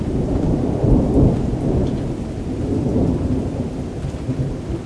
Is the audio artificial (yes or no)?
yes